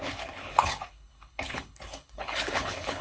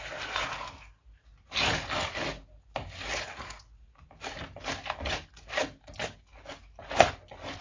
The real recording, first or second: second